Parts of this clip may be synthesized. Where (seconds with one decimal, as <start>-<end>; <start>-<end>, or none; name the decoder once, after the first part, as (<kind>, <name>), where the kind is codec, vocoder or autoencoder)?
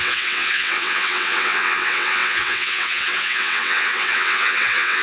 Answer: 0.0-5.0 (vocoder, WaveNeXt)